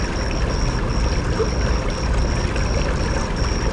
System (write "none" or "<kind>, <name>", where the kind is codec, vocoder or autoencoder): none